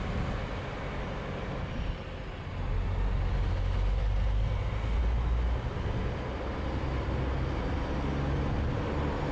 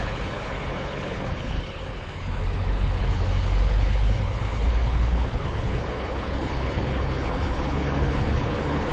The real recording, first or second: first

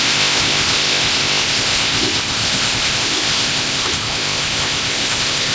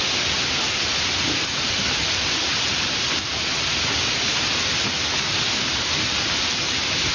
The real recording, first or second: second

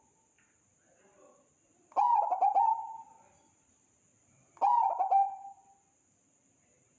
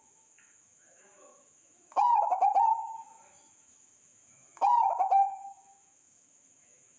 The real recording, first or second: first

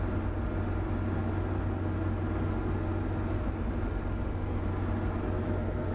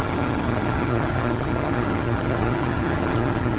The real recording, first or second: first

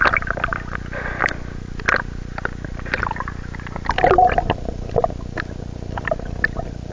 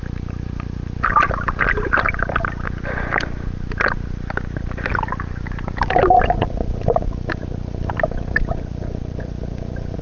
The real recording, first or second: first